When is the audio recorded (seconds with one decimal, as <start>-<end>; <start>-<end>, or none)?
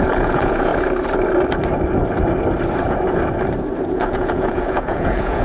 0.7-3.9